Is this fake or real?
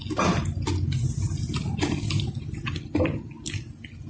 real